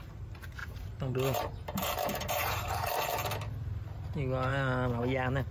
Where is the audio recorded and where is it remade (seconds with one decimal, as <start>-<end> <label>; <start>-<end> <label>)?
0.0-0.6 recorded; 0.6-2.9 remade; 2.9-5.5 recorded